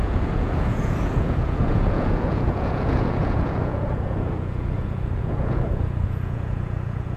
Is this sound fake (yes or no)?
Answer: yes